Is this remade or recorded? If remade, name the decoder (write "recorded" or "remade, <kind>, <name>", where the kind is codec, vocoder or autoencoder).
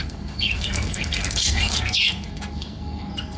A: remade, codec, SNAC